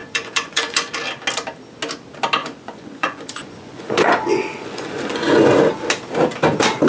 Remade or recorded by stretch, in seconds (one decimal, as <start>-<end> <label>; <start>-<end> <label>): 0.0-0.9 remade; 0.9-2.4 recorded; 2.4-5.5 remade; 5.5-6.9 recorded